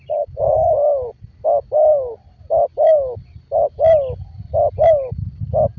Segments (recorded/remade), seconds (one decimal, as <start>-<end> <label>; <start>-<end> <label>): 0.0-5.8 recorded